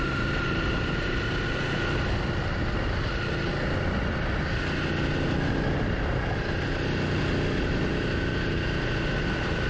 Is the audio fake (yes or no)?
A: no